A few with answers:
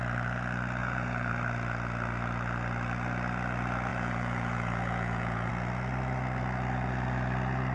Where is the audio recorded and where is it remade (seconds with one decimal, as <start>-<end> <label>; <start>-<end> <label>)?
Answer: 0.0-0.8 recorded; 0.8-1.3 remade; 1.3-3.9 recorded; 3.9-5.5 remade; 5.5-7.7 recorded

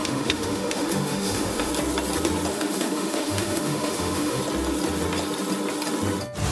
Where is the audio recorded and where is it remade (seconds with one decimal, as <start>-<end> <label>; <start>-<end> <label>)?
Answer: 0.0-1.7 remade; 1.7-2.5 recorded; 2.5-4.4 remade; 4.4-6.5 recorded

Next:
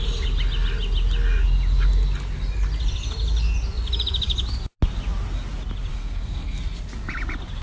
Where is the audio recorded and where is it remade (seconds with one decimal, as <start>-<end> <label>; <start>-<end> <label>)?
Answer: 0.0-5.9 recorded; 5.9-6.6 remade; 6.6-7.6 recorded

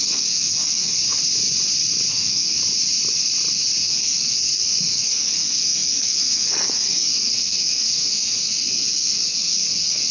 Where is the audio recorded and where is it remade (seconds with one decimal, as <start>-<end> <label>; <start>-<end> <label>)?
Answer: 0.0-1.0 remade; 1.0-2.1 recorded; 2.1-2.6 remade; 2.6-3.8 recorded; 3.8-10.1 remade

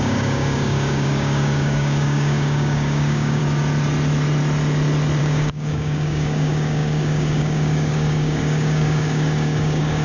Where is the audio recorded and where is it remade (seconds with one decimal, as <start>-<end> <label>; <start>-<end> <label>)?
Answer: 0.0-3.4 remade; 3.4-5.2 recorded; 5.2-10.0 remade

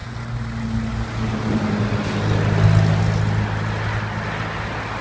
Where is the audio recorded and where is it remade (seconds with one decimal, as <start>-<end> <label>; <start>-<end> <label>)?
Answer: 0.0-5.0 recorded